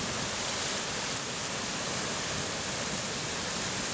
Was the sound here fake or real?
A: real